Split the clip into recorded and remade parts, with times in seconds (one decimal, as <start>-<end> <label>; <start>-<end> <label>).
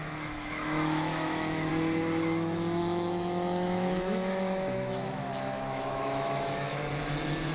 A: 0.0-1.7 remade; 1.7-2.8 recorded; 2.8-6.9 remade; 6.9-7.5 recorded